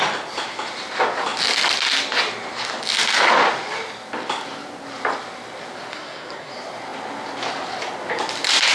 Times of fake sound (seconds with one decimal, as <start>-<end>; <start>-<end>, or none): 5.9-6.5